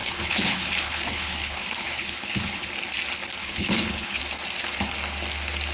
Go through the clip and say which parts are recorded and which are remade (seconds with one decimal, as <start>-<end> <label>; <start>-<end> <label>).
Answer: 0.0-2.7 remade; 2.7-3.4 recorded; 3.4-4.2 remade; 4.2-5.7 recorded